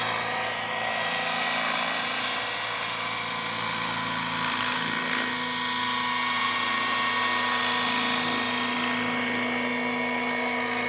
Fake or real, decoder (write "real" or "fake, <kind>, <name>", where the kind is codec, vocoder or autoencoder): real